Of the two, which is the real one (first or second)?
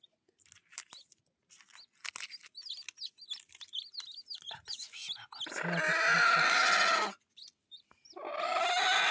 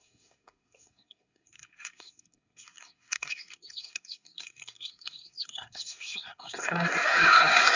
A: first